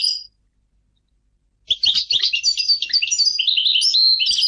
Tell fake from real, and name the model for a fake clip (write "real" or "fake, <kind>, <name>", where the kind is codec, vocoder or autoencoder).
real